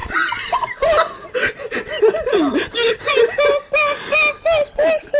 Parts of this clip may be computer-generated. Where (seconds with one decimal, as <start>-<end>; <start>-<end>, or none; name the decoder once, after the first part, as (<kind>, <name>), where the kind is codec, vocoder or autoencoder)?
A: none